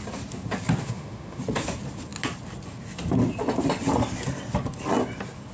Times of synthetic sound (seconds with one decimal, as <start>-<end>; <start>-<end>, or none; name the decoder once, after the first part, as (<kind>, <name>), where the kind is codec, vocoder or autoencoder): 0.8-1.4 (autoencoder, DAC-VAE)